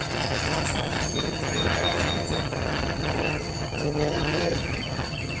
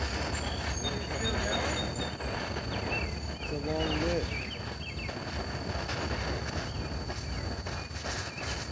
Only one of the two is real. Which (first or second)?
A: second